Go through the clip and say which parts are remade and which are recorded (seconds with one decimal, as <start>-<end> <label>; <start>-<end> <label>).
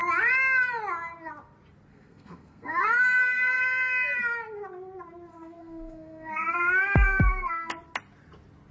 0.0-1.9 recorded; 1.9-3.6 remade; 3.6-5.3 recorded; 5.3-7.7 remade; 7.7-8.7 recorded